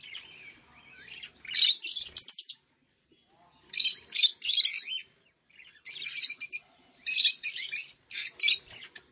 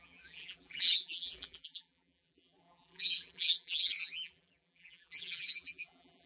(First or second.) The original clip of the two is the first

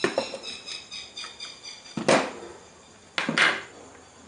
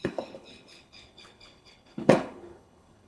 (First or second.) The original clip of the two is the first